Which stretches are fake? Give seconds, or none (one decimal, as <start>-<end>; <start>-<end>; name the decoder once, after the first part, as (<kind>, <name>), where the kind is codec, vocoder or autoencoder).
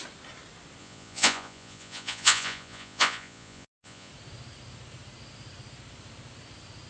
0.8-4.1 (vocoder, Vocos)